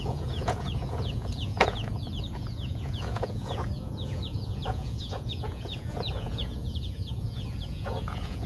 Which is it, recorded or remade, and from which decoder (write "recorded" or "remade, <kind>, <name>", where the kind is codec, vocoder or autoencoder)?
remade, vocoder, Vocos